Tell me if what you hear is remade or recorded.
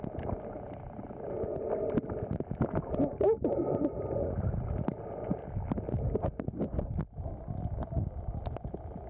recorded